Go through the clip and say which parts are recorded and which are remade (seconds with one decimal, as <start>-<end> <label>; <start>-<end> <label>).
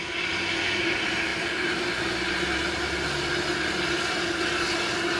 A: 0.0-5.2 recorded